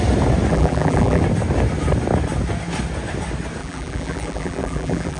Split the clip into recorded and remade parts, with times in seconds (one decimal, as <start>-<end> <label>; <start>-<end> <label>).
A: 0.0-0.5 recorded; 0.5-1.2 remade; 1.2-3.6 recorded; 3.6-5.2 remade